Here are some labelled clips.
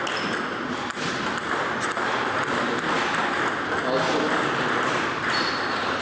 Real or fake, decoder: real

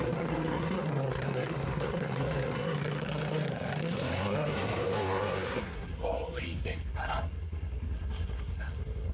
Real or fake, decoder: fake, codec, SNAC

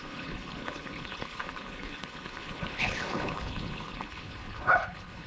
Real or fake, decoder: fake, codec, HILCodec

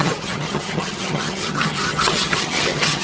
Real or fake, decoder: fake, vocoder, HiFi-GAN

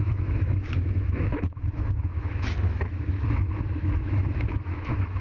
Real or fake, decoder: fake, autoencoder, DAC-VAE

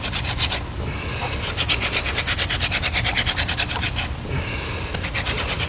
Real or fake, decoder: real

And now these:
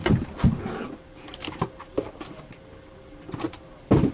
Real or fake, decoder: real